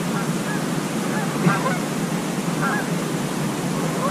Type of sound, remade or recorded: recorded